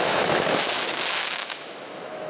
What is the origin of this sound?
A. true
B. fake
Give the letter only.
B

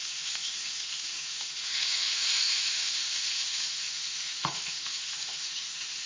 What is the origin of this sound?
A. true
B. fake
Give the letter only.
B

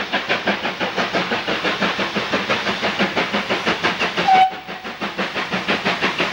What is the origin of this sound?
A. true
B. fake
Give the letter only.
A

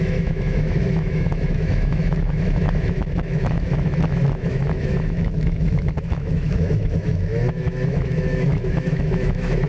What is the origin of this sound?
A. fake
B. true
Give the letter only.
A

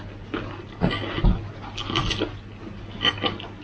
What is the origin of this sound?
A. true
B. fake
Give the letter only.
A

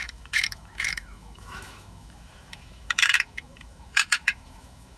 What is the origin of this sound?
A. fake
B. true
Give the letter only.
A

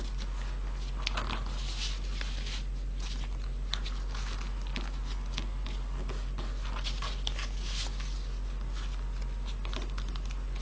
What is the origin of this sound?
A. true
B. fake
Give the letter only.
A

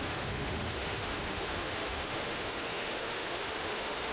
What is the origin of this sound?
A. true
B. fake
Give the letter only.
B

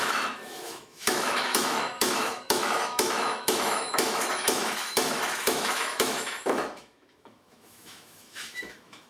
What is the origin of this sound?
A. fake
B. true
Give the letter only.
A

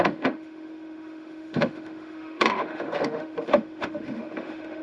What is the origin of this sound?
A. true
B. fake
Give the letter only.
B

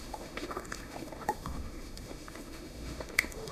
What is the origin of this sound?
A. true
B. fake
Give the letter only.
B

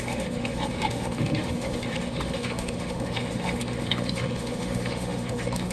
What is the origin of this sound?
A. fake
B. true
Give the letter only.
A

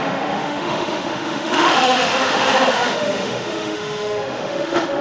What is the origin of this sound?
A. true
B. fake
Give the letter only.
B